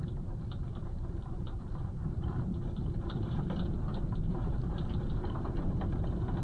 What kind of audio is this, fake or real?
fake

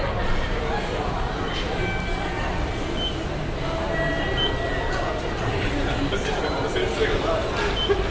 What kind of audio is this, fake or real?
real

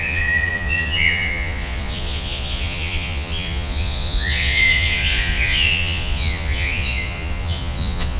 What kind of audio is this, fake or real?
fake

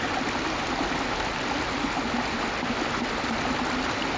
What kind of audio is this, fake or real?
real